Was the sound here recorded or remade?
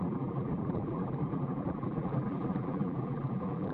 remade